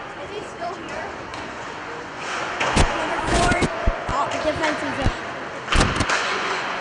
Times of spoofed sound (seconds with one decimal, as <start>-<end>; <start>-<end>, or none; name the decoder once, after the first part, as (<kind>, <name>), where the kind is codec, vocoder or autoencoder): 0.0-4.1 (vocoder, Vocos); 6.1-6.8